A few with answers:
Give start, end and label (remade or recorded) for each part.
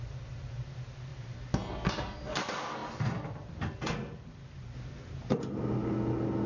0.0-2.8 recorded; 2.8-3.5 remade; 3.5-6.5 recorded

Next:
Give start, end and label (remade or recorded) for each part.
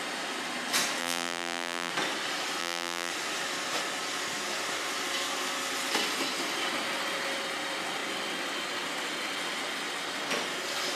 0.0-1.0 recorded; 1.0-1.9 remade; 1.9-2.6 recorded; 2.6-3.1 remade; 3.1-11.0 recorded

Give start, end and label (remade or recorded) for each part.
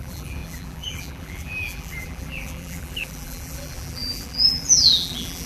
0.0-5.5 remade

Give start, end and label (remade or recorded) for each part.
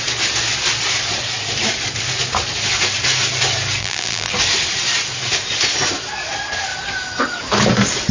0.0-3.8 recorded; 3.8-4.3 remade; 4.3-8.1 recorded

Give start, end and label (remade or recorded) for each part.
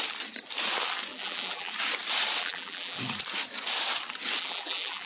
0.0-1.1 recorded; 1.1-1.7 remade; 1.7-2.4 recorded; 2.4-3.0 remade; 3.0-4.4 recorded; 4.4-5.1 remade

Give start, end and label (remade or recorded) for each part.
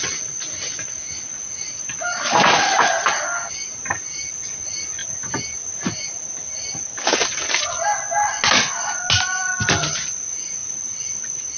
0.0-10.6 recorded; 10.6-11.6 remade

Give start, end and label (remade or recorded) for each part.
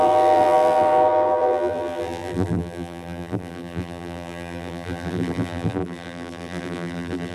0.0-7.3 remade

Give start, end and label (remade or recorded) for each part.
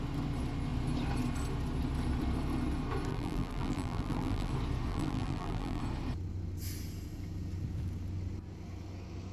0.0-3.1 recorded; 3.1-4.5 remade; 4.5-4.9 recorded; 4.9-5.8 remade; 5.8-9.3 recorded